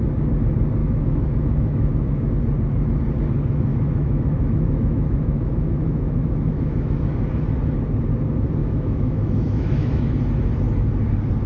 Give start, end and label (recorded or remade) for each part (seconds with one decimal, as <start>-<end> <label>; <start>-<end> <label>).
0.0-0.8 recorded; 0.8-2.3 remade; 2.3-3.7 recorded; 3.7-7.0 remade; 7.0-8.6 recorded; 8.6-10.2 remade; 10.2-11.5 recorded